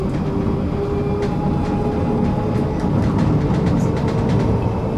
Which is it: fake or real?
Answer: real